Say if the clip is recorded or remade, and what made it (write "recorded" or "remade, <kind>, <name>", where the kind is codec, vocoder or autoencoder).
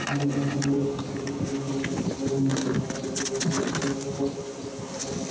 recorded